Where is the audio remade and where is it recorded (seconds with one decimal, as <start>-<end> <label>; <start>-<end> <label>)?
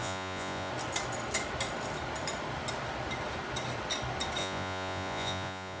0.0-0.7 remade; 0.7-4.4 recorded; 4.4-5.8 remade